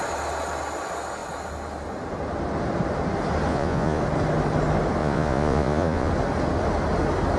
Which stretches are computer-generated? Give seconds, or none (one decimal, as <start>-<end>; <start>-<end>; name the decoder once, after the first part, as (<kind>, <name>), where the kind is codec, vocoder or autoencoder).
3.5-4.0 (vocoder, Vocos); 5.0-6.1

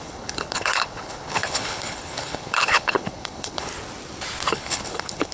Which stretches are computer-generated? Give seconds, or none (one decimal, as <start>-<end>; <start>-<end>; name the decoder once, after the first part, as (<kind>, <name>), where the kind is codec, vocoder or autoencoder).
0.0-3.7 (codec, HILCodec); 4.5-5.3

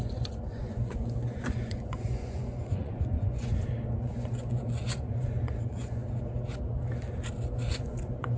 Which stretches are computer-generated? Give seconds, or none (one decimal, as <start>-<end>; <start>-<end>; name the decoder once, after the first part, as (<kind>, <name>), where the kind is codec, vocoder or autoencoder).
0.0-3.5 (vocoder, Vocos); 4.0-6.0; 7.7-8.4

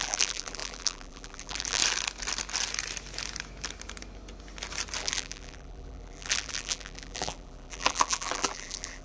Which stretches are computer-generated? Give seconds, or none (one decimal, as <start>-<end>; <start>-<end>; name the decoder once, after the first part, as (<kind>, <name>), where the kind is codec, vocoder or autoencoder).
0.0-1.8 (vocoder, BigVGAN v2); 5.0-9.0

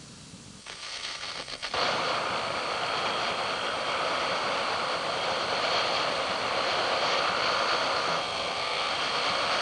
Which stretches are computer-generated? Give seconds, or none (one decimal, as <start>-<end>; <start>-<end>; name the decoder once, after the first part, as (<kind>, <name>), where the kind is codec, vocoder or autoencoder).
0.6-1.7 (codec, SNAC); 8.1-8.9